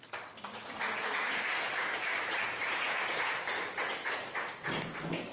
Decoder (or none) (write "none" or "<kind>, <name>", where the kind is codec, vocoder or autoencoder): none